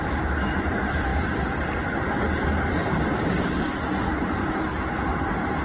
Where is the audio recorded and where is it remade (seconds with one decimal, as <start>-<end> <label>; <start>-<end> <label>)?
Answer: 0.0-1.1 recorded; 1.1-4.5 remade; 4.5-5.1 recorded; 5.1-5.6 remade